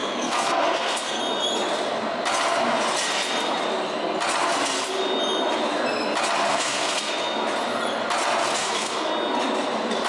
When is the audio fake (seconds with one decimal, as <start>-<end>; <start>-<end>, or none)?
0.0-1.2; 6.5-7.1; 8.6-9.1